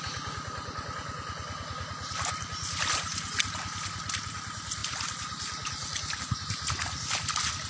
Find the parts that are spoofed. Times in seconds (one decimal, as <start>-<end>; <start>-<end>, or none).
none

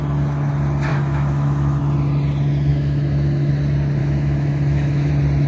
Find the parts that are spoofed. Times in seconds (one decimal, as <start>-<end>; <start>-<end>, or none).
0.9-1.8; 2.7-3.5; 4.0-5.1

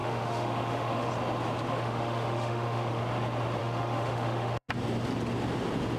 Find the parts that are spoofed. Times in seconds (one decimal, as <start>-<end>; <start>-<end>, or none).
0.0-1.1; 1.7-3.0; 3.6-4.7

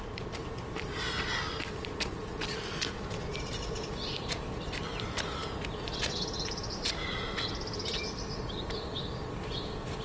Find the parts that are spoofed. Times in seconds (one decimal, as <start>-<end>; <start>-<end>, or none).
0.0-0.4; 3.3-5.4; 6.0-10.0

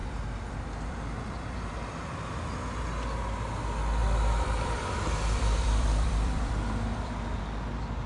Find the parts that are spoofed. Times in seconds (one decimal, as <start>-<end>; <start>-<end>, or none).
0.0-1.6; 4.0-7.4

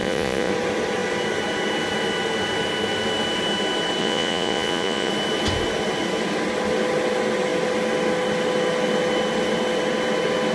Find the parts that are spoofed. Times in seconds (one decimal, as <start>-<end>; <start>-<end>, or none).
0.0-0.5; 4.0-5.1

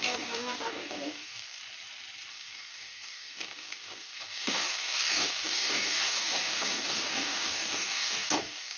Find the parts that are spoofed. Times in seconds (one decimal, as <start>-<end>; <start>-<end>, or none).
0.0-1.6; 2.3-8.8

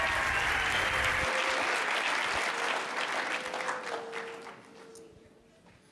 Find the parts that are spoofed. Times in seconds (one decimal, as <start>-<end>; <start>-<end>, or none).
none